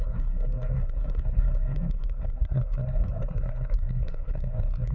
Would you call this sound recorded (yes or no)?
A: no